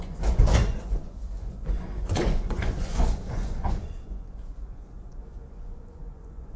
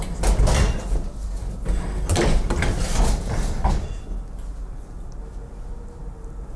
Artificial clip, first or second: first